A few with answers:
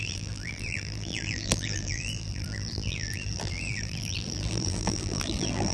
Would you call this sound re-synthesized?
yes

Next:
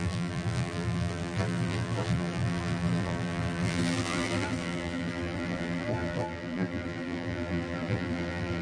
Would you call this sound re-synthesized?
yes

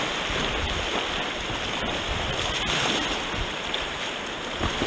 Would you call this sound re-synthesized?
no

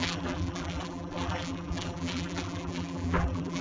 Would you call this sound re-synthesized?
yes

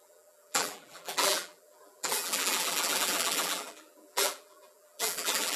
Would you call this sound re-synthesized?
yes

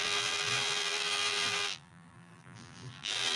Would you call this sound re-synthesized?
yes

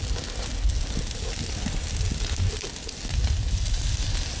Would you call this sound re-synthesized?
no